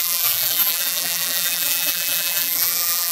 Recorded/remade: remade